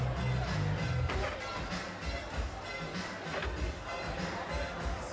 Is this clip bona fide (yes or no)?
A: yes